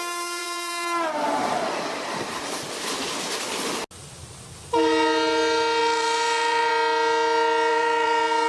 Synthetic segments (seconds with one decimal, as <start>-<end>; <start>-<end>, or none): 0.4-2.7; 5.8-6.7; 7.7-8.5